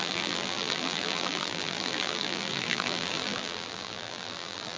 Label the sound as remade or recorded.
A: remade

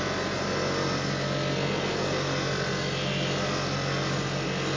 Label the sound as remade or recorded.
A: recorded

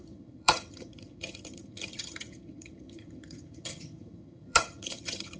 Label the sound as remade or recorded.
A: remade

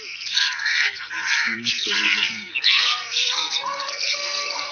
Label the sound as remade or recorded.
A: remade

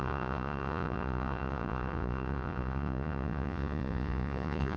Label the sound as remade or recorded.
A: remade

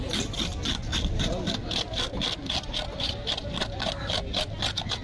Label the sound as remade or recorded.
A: recorded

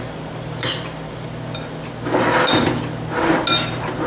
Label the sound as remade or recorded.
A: recorded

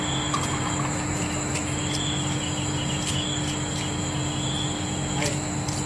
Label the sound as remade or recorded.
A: recorded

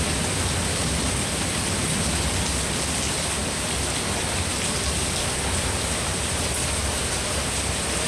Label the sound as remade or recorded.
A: recorded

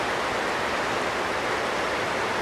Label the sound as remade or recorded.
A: recorded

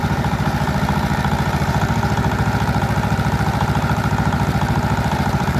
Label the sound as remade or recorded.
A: remade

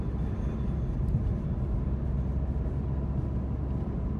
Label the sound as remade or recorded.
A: recorded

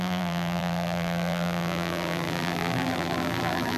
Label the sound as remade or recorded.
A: remade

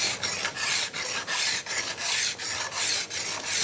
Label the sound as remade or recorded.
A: recorded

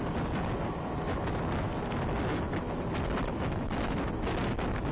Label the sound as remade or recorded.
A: recorded